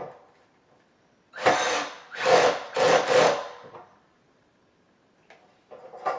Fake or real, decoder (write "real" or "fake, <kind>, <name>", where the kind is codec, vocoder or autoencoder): real